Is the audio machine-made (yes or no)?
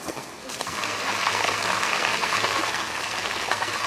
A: yes